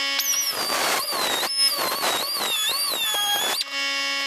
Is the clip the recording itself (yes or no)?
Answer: yes